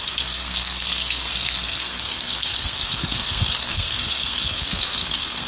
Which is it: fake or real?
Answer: fake